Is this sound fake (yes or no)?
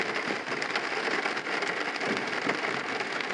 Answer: no